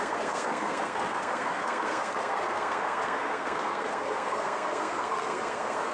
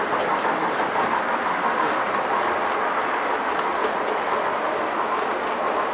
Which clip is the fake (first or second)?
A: first